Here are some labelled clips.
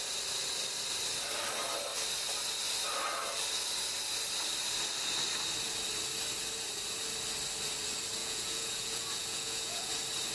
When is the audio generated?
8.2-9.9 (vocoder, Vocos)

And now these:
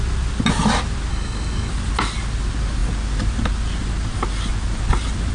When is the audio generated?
1.1-1.7 (codec, DAC)

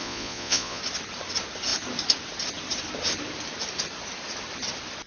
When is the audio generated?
0.0-0.8 (vocoder, Vocos)

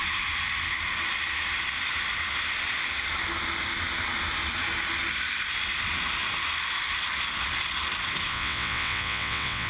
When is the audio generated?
8.3-9.7 (vocoder, WaveNeXt)

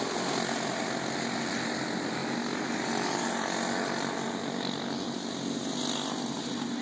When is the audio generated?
none

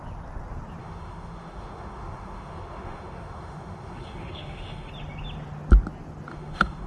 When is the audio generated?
0.8-4.9 (autoencoder, DAC-VAE); 6.3-6.9